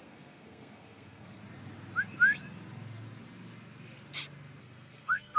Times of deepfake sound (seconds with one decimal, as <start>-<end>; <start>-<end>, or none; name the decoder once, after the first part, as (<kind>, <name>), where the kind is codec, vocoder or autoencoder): 0.0-1.4 (codec, SNAC); 4.6-5.4